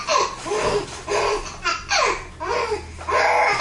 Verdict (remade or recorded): recorded